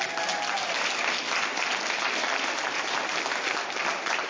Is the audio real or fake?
real